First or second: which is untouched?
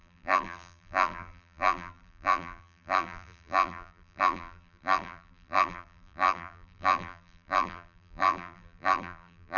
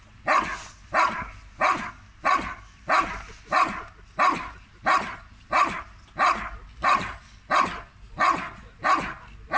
second